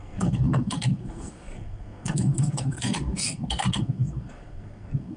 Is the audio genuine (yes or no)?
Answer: no